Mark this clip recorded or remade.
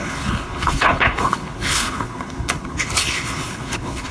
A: remade